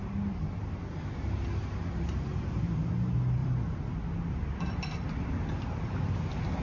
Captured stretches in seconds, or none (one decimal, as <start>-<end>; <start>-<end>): 0.0-6.6